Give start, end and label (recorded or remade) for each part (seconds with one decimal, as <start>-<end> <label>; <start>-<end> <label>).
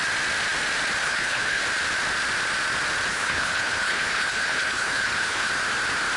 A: 0.0-1.0 recorded; 1.0-1.6 remade; 1.6-3.1 recorded; 3.1-5.5 remade; 5.5-6.2 recorded